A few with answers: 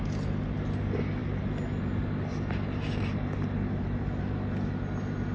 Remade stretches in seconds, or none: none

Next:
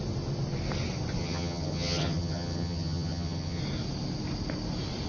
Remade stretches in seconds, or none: 1.2-3.6

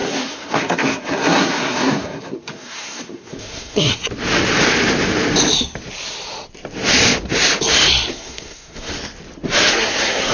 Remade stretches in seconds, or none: 0.0-3.9; 8.1-8.9; 9.7-10.3

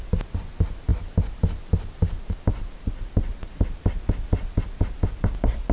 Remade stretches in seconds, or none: none

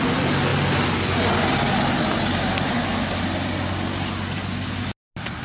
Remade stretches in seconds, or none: none